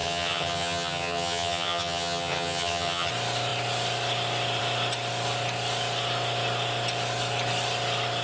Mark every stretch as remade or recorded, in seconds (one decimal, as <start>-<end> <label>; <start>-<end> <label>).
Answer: 0.0-3.1 remade; 3.1-8.2 recorded